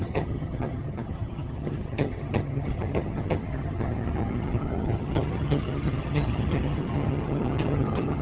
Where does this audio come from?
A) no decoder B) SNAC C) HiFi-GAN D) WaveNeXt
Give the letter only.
C